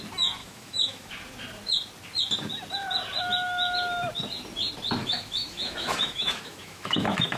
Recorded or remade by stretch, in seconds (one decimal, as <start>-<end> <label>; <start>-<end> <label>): 0.0-0.4 recorded; 0.4-1.1 remade; 1.1-5.0 recorded; 5.0-7.4 remade